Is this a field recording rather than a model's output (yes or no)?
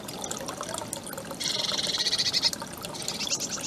yes